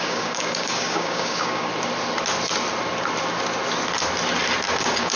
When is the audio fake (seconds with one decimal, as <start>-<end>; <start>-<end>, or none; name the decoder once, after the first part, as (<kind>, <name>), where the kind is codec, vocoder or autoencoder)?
0.0-1.7 (codec, DAC); 4.8-5.2